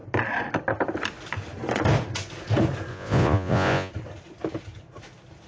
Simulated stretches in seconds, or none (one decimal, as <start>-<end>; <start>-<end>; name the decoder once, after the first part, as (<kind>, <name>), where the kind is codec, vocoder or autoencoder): 2.9-3.9 (vocoder, Vocos)